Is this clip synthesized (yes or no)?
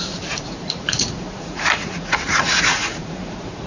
yes